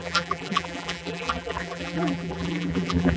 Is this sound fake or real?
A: fake